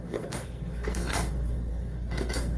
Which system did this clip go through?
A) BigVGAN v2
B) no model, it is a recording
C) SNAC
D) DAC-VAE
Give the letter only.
C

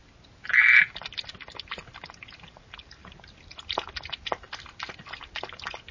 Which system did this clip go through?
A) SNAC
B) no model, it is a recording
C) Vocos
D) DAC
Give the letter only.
B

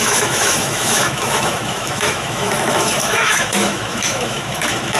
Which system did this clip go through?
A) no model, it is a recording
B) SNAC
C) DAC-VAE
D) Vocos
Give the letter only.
C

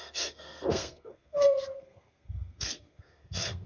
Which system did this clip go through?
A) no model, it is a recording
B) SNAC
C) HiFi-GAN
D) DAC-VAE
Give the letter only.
B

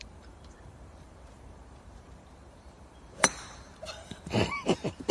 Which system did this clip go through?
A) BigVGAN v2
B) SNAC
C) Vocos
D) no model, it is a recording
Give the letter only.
A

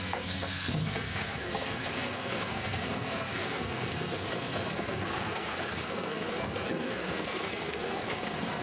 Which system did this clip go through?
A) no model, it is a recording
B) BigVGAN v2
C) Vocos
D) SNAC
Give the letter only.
D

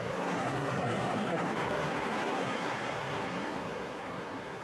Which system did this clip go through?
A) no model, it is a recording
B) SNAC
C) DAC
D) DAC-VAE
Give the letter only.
B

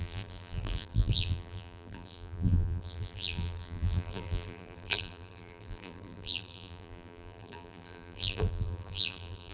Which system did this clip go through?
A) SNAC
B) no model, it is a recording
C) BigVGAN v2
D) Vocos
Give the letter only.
C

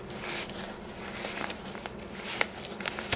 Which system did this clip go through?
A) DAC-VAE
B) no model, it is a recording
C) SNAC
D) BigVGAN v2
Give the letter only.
B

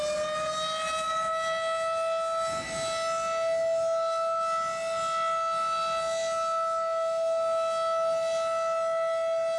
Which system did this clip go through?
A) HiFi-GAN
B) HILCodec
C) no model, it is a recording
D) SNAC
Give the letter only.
C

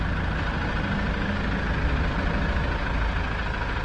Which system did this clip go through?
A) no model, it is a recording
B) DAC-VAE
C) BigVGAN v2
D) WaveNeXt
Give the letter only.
A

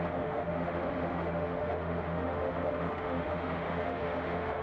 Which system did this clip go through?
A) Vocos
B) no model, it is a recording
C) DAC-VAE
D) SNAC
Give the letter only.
C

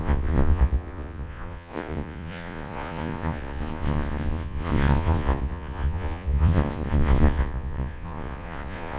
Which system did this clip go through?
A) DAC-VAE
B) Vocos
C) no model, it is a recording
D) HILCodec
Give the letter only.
B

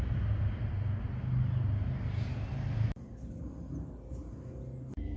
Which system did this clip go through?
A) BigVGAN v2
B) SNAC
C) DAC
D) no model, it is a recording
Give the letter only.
D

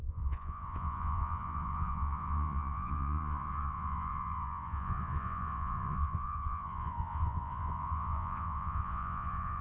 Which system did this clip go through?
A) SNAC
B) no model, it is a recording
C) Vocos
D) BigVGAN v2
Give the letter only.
C